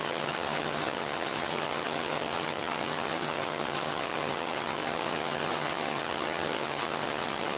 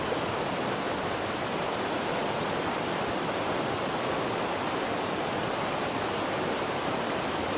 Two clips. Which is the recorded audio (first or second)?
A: second